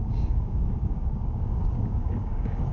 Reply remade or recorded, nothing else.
remade